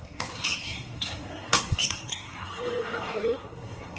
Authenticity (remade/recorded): remade